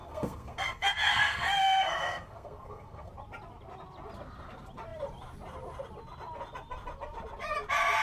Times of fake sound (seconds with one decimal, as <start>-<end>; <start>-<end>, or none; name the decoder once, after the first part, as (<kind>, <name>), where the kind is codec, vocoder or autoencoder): 0.0-3.1 (codec, SNAC)